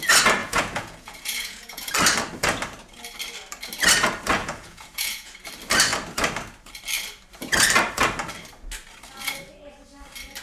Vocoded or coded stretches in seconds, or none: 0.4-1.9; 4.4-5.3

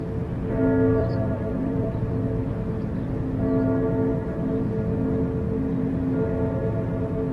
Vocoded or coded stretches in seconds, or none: 1.0-2.5

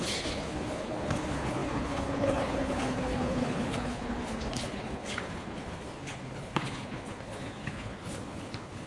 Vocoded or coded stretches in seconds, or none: 0.0-8.9

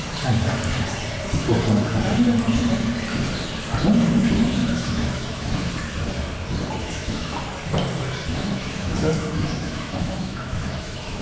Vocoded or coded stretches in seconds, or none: 4.6-5.7; 6.8-7.4; 8.3-11.2